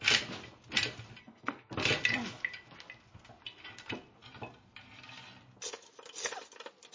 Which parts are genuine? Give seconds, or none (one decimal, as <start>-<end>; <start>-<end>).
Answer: 0.0-1.2; 1.7-6.9